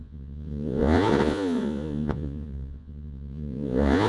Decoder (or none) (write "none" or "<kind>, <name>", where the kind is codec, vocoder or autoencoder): vocoder, Vocos